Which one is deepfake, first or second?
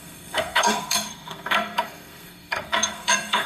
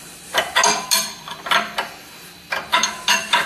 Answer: first